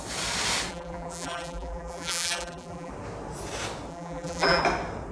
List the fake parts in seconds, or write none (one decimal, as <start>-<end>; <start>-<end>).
0.7-2.9; 3.9-4.6